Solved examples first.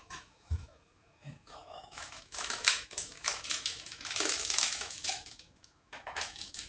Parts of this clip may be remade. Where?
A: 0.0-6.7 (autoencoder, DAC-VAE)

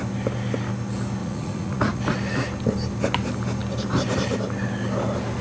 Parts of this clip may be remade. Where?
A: 1.2-2.0 (vocoder, Vocos)

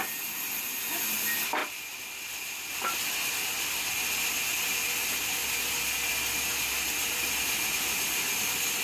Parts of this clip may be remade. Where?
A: 1.6-2.3 (vocoder, BigVGAN v2); 7.0-8.4